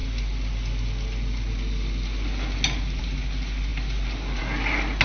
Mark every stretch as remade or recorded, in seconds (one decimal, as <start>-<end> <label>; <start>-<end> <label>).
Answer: 0.0-5.0 recorded